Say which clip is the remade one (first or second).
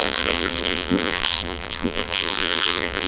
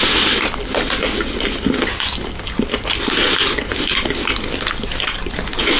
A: first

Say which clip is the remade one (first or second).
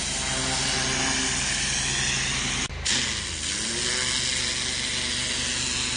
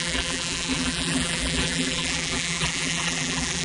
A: second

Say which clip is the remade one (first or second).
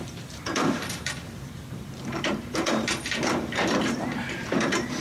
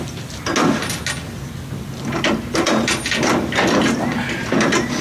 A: first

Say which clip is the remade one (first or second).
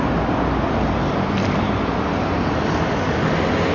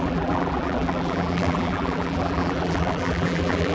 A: second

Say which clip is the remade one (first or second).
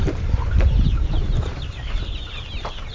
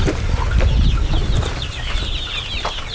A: first